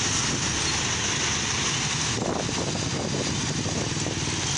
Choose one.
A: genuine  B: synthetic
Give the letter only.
A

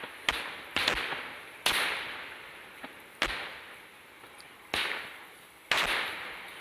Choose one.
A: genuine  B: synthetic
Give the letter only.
A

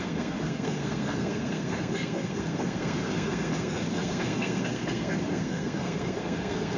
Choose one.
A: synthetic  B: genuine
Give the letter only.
A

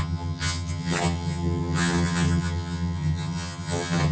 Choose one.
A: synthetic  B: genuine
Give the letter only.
A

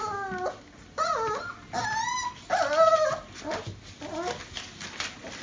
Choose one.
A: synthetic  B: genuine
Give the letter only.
B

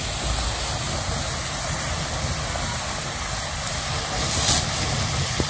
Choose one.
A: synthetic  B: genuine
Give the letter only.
B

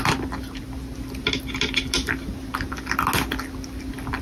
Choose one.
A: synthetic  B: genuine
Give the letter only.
B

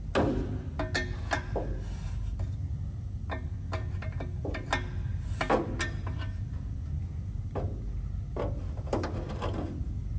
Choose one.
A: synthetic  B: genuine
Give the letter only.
B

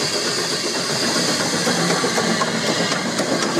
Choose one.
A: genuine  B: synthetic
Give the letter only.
A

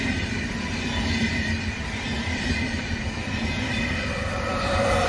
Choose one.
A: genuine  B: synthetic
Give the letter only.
B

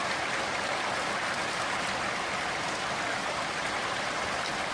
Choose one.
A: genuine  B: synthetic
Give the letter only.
A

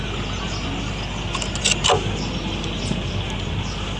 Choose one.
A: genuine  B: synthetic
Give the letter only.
A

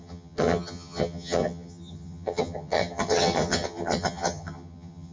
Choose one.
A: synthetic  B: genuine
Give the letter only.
A